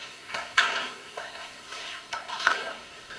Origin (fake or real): fake